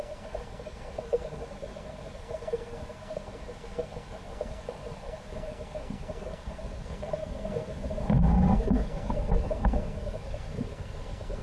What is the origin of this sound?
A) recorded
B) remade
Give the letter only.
B